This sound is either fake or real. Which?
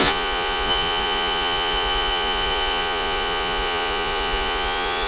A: fake